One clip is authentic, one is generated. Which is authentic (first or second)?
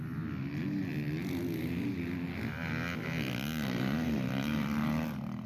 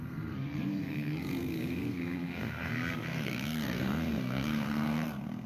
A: first